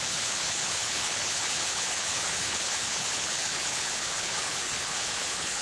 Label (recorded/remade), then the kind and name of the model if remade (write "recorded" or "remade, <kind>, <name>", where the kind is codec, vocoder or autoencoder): remade, codec, HILCodec